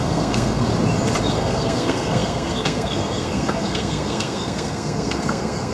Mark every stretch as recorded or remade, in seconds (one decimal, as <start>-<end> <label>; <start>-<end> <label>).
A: 0.0-0.7 remade; 0.7-1.3 recorded; 1.3-5.7 remade